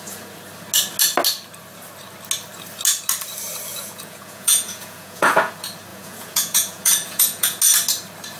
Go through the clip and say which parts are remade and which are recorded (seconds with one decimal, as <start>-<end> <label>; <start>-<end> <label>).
0.0-3.7 recorded; 3.7-5.5 remade; 5.5-5.9 recorded; 5.9-7.6 remade; 7.6-8.4 recorded